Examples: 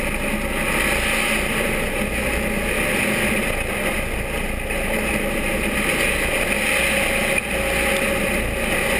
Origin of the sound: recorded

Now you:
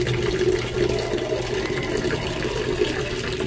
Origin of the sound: recorded